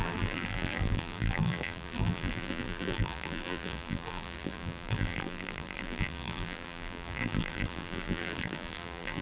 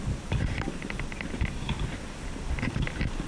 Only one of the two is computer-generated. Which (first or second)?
first